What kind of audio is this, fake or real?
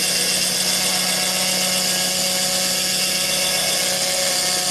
real